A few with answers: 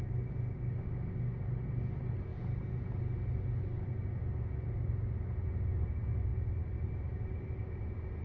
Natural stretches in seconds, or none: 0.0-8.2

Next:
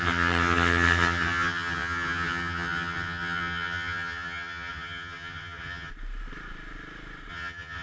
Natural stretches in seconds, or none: 5.9-7.3

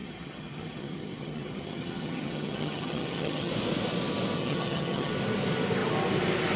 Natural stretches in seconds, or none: 3.5-4.4; 5.1-6.6

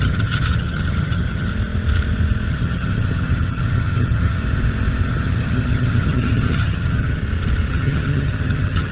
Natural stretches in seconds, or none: 1.5-2.5; 4.4-5.1; 7.2-7.7